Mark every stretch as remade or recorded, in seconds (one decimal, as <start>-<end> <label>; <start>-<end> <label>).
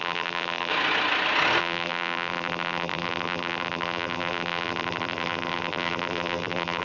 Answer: 0.0-0.7 remade; 0.7-1.6 recorded; 1.6-6.8 remade